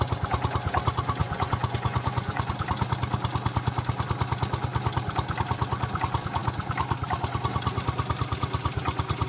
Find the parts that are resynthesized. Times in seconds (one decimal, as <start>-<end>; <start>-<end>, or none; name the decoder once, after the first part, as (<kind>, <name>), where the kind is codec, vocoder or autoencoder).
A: 1.2-2.5 (vocoder, Vocos)

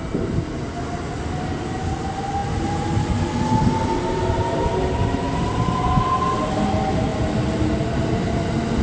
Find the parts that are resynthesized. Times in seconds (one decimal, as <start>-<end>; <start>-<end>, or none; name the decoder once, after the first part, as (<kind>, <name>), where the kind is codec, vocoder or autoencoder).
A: none

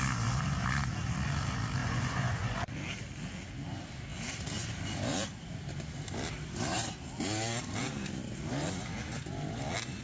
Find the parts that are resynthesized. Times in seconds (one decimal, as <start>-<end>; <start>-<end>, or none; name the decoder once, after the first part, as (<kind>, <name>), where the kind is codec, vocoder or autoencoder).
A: 1.8-2.7 (vocoder, Vocos)

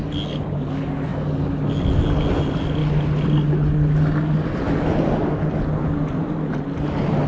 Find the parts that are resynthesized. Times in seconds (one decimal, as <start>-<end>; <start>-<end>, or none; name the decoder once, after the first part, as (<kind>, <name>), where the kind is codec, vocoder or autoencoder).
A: none

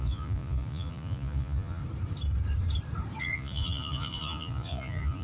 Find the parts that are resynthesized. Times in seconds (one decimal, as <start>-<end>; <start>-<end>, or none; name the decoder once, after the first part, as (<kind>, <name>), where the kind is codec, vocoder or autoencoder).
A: 0.0-1.8 (vocoder, Vocos); 3.2-5.2

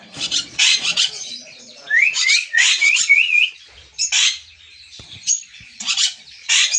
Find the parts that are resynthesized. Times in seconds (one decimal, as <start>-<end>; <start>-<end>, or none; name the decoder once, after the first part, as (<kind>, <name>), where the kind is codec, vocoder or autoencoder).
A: 0.0-3.8 (vocoder, Vocos); 5.5-6.8